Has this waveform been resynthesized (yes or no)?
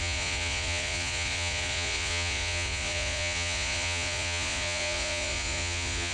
yes